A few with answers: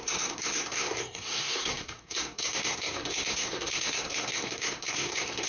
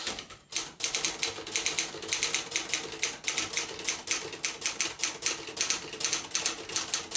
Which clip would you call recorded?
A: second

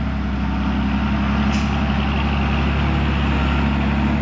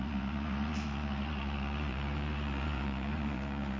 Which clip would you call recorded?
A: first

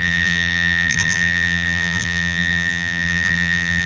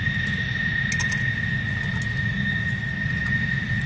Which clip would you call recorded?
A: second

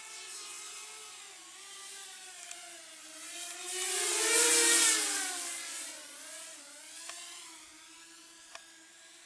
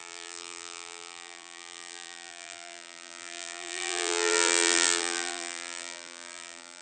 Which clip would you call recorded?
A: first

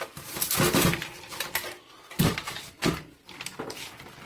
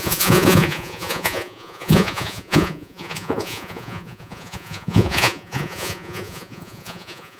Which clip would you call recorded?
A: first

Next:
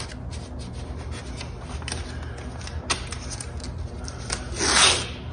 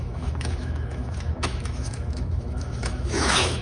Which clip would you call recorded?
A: first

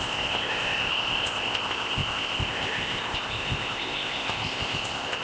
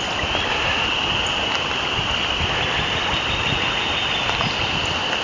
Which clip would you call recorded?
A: second